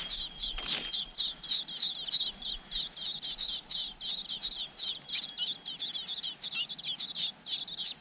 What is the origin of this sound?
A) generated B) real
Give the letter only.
B